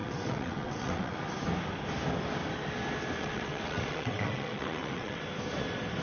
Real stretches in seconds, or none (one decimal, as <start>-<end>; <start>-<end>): 1.2-3.2; 5.2-6.0